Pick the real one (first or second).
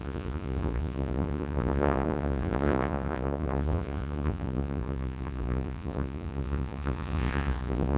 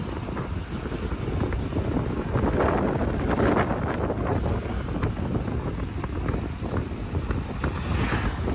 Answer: second